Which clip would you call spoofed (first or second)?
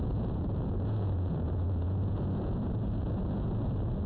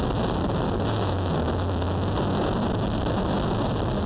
first